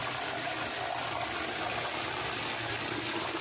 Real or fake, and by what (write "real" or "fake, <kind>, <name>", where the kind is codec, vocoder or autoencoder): real